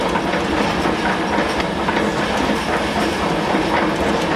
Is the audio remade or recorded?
recorded